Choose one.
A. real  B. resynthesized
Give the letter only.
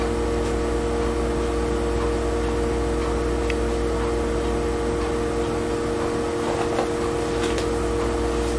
A